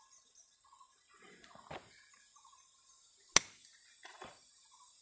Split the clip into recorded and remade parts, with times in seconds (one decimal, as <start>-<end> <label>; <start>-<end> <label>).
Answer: 0.0-3.6 recorded; 3.6-5.0 remade